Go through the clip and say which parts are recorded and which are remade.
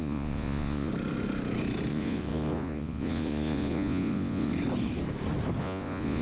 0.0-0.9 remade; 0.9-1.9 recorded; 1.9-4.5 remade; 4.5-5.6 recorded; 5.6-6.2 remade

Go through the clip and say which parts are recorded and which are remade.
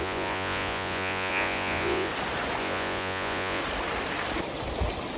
0.0-2.1 remade; 2.1-2.6 recorded; 2.6-3.6 remade; 3.6-5.2 recorded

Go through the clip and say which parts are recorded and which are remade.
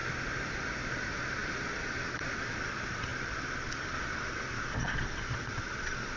0.0-0.9 recorded; 0.9-6.2 remade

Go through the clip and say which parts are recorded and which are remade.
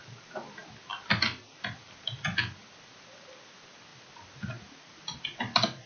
0.0-5.9 recorded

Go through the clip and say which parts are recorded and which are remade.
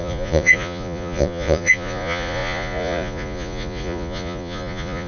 0.0-5.1 remade